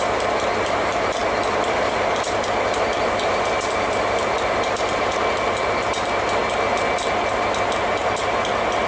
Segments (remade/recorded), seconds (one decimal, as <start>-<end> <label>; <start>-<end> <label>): 0.0-1.2 recorded; 1.2-5.2 remade; 5.2-8.9 recorded